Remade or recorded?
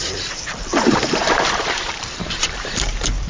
remade